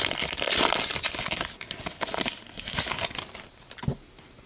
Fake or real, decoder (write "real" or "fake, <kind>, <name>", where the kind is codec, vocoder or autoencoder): real